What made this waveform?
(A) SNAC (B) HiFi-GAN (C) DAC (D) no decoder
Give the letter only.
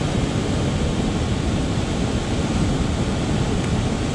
D